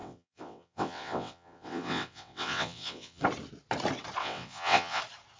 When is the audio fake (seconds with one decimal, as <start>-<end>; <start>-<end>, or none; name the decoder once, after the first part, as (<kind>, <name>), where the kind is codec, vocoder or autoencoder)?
0.0-3.2 (vocoder, WaveNeXt); 4.2-5.0

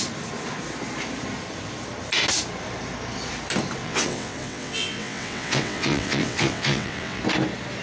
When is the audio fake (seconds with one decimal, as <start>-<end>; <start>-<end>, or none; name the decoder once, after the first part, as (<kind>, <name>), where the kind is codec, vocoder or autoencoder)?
3.8-7.2 (vocoder, WaveNeXt)